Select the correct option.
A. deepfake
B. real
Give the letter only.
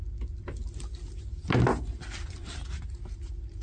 B